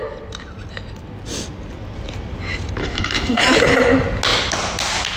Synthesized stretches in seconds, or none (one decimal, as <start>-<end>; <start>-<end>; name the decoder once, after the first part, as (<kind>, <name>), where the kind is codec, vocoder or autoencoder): 2.8-3.4 (codec, DAC)